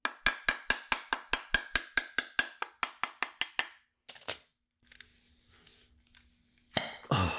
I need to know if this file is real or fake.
real